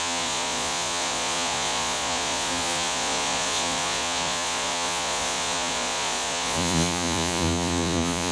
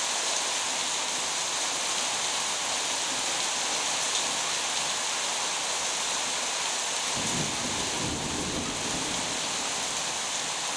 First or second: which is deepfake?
first